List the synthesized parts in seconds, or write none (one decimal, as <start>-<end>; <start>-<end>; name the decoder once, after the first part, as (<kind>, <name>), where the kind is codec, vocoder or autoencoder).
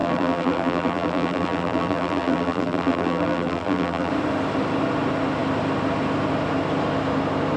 0.0-4.1 (vocoder, BigVGAN v2)